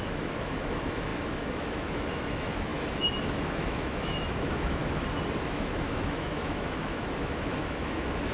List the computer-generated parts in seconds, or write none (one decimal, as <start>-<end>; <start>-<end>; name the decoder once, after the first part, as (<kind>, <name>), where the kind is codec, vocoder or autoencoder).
0.0-4.8 (autoencoder, DAC-VAE); 5.4-8.3